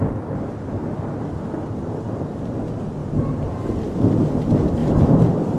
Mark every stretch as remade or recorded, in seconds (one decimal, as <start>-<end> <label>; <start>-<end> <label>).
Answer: 0.0-3.0 recorded; 3.0-3.7 remade; 3.7-4.8 recorded; 4.8-5.6 remade